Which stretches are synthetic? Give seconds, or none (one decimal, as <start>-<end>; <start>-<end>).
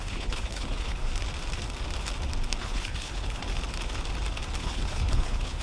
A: 0.0-1.1; 2.6-3.4; 4.6-5.6